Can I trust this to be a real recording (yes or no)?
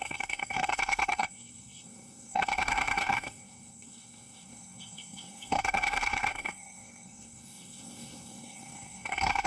no